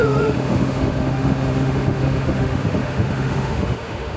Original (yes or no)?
no